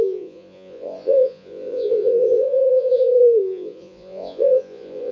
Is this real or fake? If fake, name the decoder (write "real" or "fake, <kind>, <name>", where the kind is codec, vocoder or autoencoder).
fake, vocoder, Vocos